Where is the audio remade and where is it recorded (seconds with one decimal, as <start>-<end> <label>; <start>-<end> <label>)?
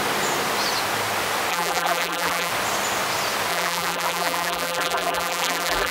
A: 0.0-1.5 recorded; 1.5-2.5 remade; 2.5-3.5 recorded; 3.5-5.9 remade